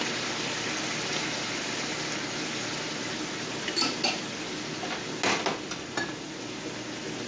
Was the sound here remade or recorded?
recorded